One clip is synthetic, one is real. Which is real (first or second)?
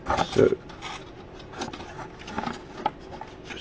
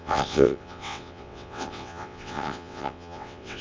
first